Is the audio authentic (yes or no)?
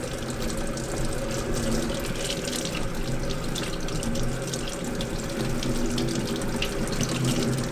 yes